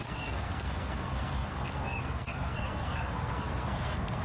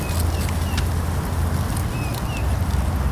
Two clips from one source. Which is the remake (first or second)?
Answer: first